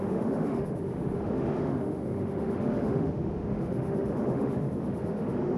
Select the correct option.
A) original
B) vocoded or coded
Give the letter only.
B